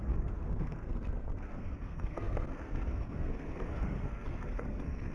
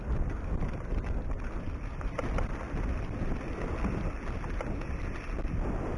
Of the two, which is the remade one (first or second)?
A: first